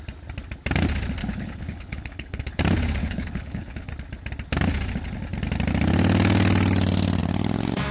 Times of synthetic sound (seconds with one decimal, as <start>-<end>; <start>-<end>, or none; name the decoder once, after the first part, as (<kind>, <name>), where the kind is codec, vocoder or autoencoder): 1.2-2.6 (codec, HILCodec); 3.0-3.9